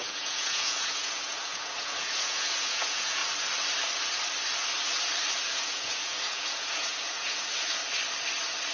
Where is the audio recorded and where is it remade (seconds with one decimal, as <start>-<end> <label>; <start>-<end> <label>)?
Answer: 0.0-3.2 remade; 3.2-5.5 recorded; 5.5-7.8 remade; 7.8-8.7 recorded